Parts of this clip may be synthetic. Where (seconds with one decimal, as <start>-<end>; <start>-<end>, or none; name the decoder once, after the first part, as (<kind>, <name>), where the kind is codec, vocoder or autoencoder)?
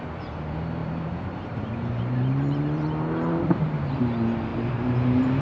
0.8-4.0 (vocoder, BigVGAN v2); 4.5-5.4